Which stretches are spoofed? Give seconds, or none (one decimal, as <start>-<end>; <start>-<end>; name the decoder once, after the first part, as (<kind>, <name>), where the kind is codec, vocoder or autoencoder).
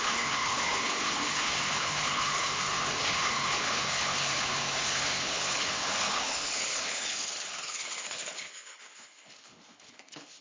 0.0-10.4 (codec, HILCodec)